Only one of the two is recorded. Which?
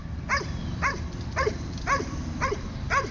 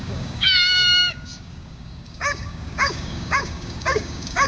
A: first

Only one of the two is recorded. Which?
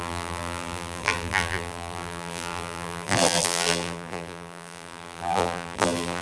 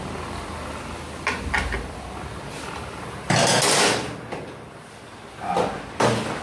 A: second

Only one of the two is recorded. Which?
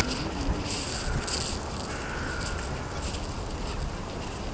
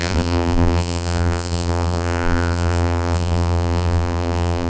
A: first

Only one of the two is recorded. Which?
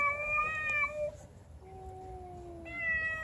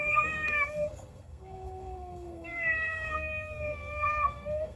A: first